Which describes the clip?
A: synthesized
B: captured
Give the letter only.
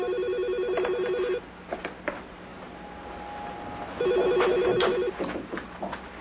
B